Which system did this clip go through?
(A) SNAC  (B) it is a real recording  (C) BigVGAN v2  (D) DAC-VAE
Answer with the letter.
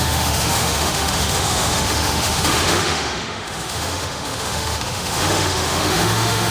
D